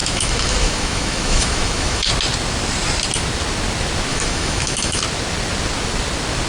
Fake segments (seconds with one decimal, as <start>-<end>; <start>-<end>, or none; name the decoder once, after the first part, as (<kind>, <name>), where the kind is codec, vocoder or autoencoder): 0.0-2.1 (autoencoder, DAC-VAE); 4.1-5.0